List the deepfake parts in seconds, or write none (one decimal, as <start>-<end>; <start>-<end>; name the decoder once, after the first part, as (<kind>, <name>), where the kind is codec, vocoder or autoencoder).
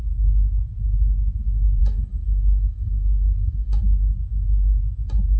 1.8-3.8 (codec, SNAC)